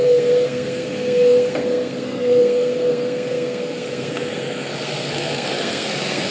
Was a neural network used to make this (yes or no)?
yes